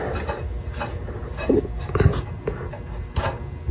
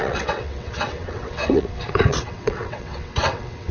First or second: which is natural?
first